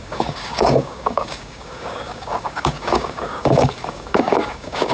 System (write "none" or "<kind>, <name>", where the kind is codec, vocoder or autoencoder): codec, DAC